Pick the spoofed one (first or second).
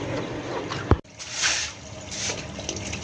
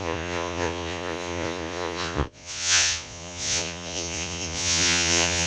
second